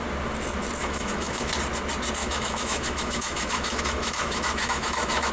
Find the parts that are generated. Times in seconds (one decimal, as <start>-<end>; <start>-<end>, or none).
0.8-1.5; 2.2-5.3